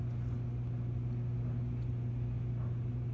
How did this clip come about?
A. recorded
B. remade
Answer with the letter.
A